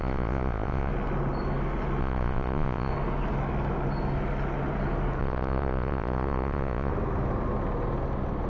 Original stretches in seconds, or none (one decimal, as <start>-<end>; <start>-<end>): 0.9-2.0; 2.9-5.2; 6.9-8.5